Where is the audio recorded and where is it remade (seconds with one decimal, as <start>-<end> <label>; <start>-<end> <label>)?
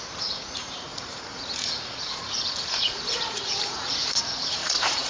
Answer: 0.0-5.1 remade